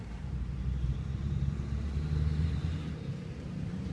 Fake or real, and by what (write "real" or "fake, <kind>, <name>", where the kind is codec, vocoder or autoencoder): fake, vocoder, BigVGAN v2